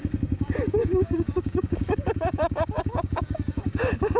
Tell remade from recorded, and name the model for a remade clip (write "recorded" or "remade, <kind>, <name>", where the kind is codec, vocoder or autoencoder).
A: remade, codec, DAC